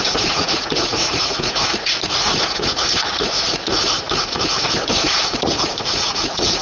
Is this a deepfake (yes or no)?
yes